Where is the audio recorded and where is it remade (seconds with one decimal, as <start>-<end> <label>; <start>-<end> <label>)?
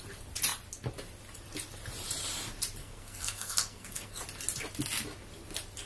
0.0-2.8 recorded; 2.8-4.2 remade; 4.2-5.9 recorded